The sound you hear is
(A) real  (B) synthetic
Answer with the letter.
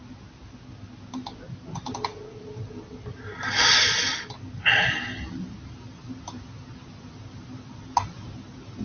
A